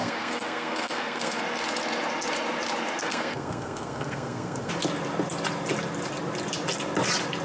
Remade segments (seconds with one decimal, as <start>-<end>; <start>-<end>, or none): 0.0-1.4; 3.0-4.7